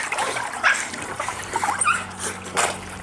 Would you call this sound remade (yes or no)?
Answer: yes